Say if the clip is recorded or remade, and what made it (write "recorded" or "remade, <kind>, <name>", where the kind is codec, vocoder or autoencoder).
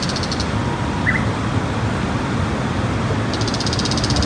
recorded